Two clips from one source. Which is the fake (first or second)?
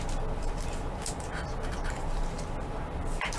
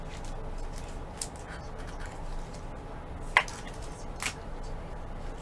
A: first